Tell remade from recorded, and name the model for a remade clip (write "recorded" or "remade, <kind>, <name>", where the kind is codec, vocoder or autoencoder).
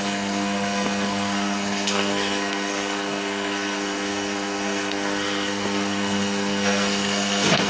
remade, codec, SNAC